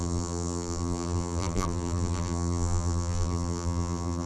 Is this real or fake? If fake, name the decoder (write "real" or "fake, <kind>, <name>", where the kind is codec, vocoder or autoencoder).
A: fake, vocoder, BigVGAN v2